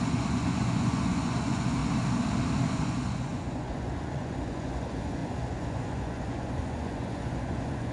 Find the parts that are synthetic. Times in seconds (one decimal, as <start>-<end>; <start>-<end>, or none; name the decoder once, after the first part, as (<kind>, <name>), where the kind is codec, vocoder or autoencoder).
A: 0.0-1.8 (vocoder, Vocos); 2.7-7.9